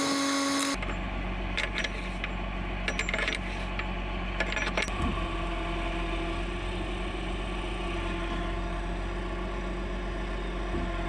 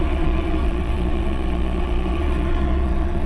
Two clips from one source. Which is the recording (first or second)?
first